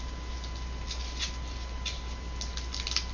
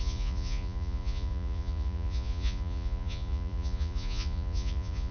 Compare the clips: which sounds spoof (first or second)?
second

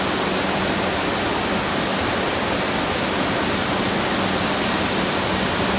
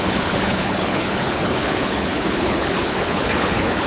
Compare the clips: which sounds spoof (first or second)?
second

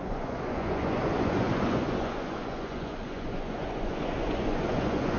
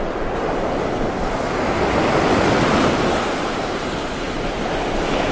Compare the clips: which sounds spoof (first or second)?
first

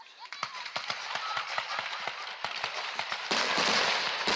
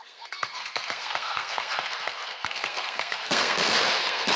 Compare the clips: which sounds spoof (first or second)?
second